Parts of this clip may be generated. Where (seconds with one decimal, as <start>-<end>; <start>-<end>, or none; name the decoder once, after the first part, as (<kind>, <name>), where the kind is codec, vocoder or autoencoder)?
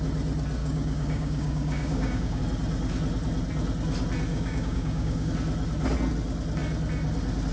0.6-2.4 (codec, DAC); 4.3-5.3